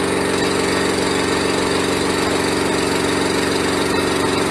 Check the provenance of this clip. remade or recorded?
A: recorded